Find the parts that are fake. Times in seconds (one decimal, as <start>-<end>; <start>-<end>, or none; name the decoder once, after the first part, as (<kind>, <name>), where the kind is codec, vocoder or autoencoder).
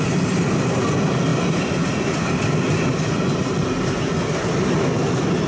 none